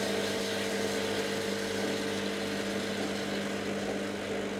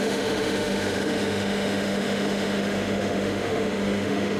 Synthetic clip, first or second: second